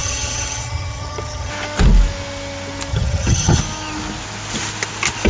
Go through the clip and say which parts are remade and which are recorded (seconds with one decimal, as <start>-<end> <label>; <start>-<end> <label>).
0.0-1.5 remade; 1.5-2.9 recorded; 2.9-3.6 remade; 3.6-5.3 recorded